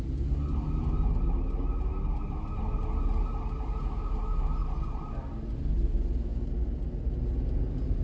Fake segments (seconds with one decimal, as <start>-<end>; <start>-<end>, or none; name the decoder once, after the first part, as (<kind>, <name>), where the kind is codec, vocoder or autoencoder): none